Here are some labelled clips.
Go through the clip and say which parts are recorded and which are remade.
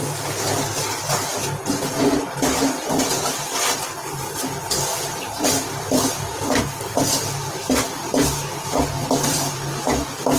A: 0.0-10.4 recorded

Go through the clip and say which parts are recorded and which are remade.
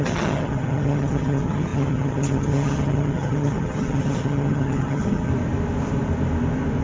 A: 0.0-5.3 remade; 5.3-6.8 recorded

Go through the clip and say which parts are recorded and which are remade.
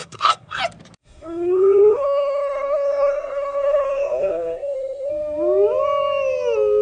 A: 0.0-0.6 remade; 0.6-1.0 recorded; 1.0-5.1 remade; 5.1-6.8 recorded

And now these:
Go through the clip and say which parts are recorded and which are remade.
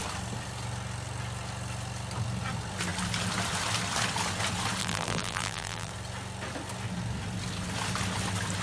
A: 0.0-4.8 recorded; 4.8-5.9 remade; 5.9-8.6 recorded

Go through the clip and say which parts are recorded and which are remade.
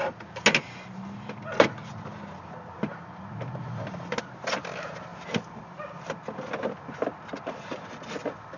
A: 0.0-8.6 recorded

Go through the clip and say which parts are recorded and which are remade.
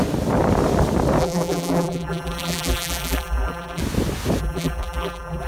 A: 0.0-1.2 recorded; 1.2-3.8 remade; 3.8-4.4 recorded; 4.4-5.5 remade